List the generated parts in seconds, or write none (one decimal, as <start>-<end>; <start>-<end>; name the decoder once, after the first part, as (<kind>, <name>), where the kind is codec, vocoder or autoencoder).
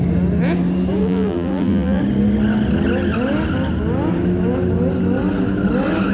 1.0-2.0 (vocoder, BigVGAN v2)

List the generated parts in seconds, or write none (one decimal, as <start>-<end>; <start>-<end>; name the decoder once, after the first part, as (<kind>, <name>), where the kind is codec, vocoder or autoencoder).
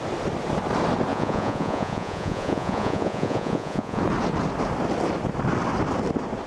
1.1-4.0 (vocoder, Vocos)